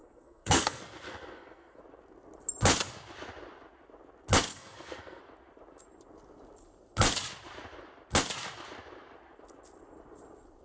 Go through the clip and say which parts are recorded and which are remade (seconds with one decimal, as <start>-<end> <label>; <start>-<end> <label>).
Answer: 0.0-1.8 remade; 1.8-4.5 recorded; 4.5-5.2 remade; 5.2-10.6 recorded

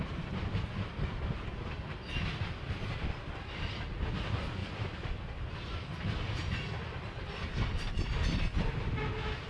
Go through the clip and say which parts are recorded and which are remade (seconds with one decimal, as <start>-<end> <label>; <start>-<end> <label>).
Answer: 0.0-9.5 recorded

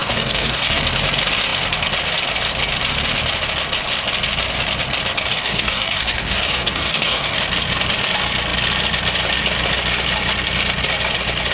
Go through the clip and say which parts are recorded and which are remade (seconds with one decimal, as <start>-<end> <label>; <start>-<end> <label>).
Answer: 0.0-0.8 remade; 0.8-5.3 recorded; 5.3-7.4 remade; 7.4-11.5 recorded

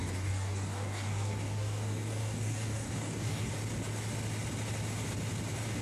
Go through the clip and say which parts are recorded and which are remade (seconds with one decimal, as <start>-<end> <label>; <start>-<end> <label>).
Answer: 0.0-3.5 remade; 3.5-5.8 recorded

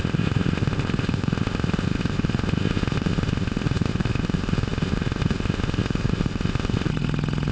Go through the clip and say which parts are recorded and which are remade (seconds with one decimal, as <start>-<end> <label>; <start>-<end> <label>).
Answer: 0.0-6.9 remade; 6.9-7.5 recorded

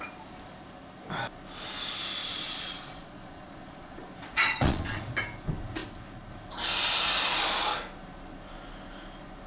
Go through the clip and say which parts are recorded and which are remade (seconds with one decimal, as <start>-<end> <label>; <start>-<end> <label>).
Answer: 0.0-2.2 recorded; 2.2-5.0 remade; 5.0-9.5 recorded